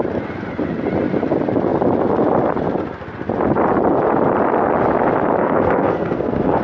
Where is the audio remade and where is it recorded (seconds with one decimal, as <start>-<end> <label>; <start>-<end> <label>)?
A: 0.0-5.4 recorded; 5.4-6.6 remade